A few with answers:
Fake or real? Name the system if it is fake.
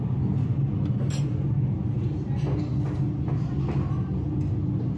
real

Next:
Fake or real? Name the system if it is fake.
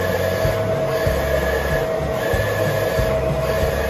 real